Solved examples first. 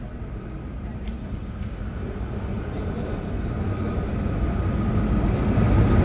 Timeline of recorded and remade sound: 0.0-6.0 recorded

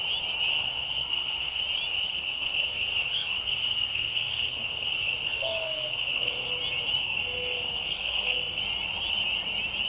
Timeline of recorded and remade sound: 0.0-0.5 recorded; 0.5-1.6 remade; 1.6-2.1 recorded; 2.1-6.5 remade; 6.5-7.0 recorded; 7.0-8.6 remade; 8.6-9.9 recorded

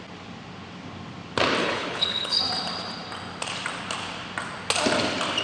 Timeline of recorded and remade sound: 0.0-1.6 recorded; 1.6-2.4 remade; 2.4-5.4 recorded